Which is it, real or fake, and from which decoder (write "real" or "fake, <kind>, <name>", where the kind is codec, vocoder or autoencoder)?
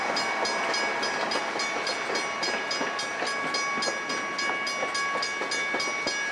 real